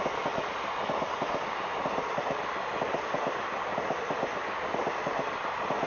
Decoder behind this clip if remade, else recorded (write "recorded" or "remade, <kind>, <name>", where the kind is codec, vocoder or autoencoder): recorded